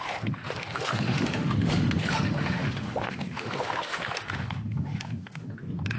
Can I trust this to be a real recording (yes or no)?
no